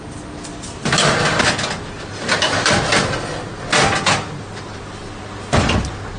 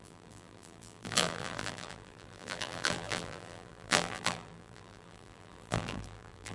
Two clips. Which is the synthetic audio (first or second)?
second